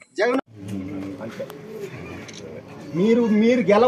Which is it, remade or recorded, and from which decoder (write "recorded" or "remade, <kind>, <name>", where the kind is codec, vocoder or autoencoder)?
recorded